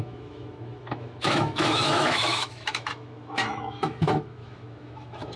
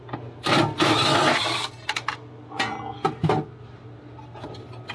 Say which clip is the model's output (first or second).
first